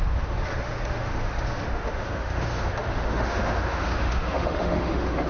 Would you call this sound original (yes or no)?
no